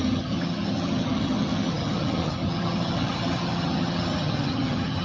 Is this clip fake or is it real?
fake